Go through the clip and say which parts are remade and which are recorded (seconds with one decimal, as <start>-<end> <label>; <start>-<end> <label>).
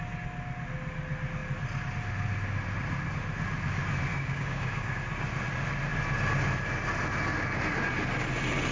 0.0-4.1 recorded; 4.1-5.0 remade; 5.0-8.7 recorded